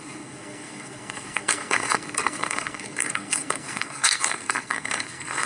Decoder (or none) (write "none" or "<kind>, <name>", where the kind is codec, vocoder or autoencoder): codec, SNAC